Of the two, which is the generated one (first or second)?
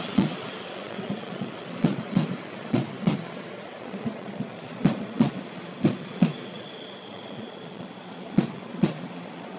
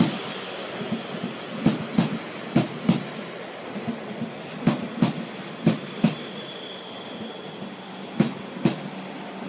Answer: first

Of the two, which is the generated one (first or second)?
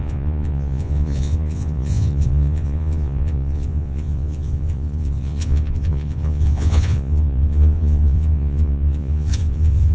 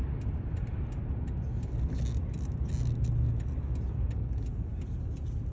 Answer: first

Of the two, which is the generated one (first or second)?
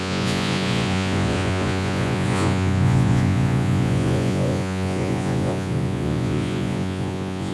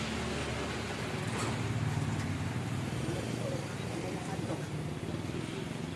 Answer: first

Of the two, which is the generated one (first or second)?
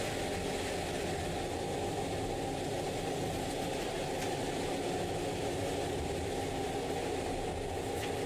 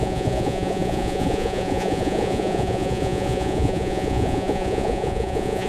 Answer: second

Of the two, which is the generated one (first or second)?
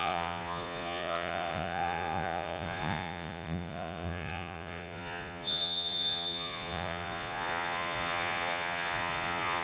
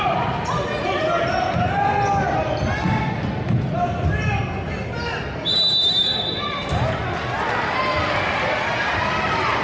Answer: first